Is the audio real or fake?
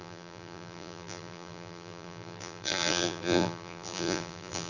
fake